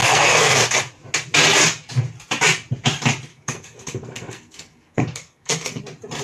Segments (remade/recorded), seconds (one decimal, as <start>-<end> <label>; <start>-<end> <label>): 0.0-0.8 remade; 0.8-3.3 recorded; 3.3-5.8 remade; 5.8-6.2 recorded